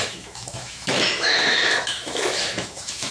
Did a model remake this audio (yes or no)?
yes